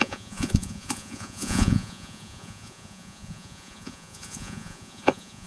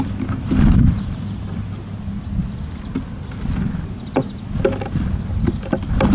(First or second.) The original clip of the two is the second